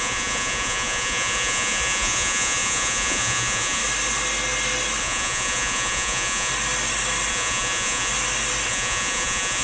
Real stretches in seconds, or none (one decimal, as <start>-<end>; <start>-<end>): 3.8-5.0; 6.5-7.3; 8.1-8.7